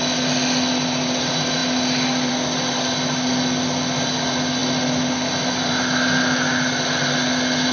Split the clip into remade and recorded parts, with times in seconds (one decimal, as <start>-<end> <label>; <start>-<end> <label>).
0.0-7.7 recorded